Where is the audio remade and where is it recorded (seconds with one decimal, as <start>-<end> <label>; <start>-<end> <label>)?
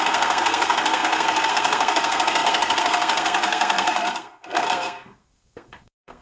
0.0-6.2 remade